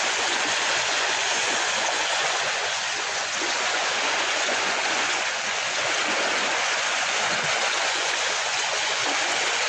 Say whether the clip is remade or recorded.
remade